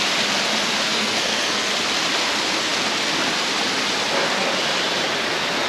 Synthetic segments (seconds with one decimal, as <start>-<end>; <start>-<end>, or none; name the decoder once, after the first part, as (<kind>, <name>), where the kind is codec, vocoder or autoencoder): 0.9-1.7 (codec, SNAC)